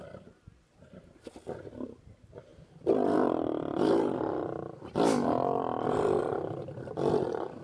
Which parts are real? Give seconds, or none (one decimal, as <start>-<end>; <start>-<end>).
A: 0.0-2.5; 6.2-7.6